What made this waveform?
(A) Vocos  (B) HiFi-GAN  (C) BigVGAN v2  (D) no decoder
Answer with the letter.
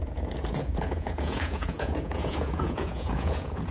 A